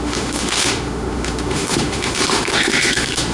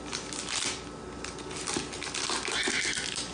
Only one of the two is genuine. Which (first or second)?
second